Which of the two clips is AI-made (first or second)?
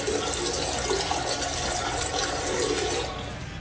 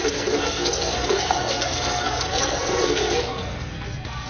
second